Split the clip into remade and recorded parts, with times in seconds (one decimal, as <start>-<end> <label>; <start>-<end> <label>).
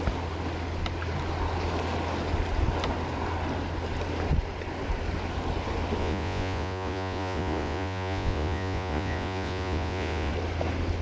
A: 0.0-6.0 recorded; 6.0-10.3 remade; 10.3-11.0 recorded